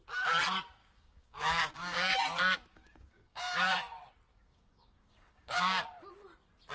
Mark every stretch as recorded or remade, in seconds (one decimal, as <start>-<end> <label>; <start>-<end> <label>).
0.0-0.8 recorded; 0.8-2.2 remade; 2.2-2.7 recorded; 2.7-3.7 remade; 3.7-4.3 recorded; 4.3-5.8 remade; 5.8-6.7 recorded